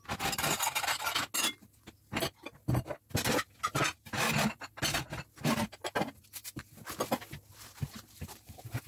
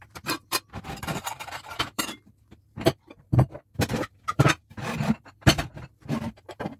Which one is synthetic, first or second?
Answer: second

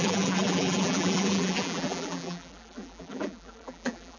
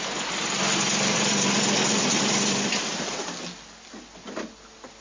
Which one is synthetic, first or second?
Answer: first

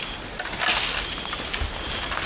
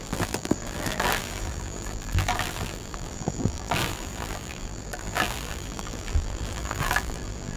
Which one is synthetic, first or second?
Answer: second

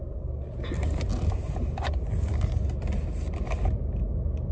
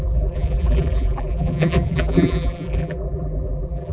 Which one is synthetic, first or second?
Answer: second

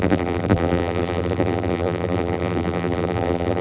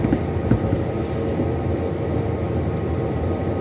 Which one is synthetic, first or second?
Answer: first